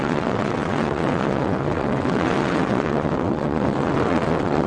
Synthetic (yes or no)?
yes